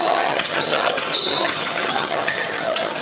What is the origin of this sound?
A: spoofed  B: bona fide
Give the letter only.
A